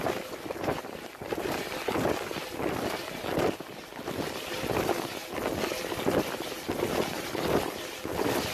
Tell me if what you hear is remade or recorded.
recorded